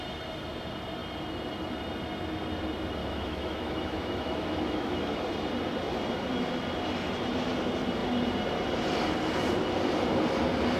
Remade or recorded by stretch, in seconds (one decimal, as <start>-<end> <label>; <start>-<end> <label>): 0.0-3.0 recorded; 3.0-5.2 remade; 5.2-10.8 recorded